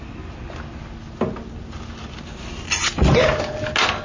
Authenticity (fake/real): real